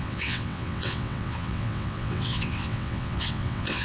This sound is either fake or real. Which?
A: fake